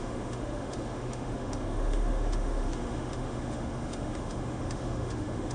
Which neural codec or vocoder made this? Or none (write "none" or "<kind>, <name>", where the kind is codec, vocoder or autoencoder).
autoencoder, DAC-VAE